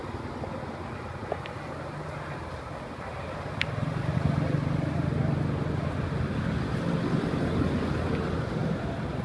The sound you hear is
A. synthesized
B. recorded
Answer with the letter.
B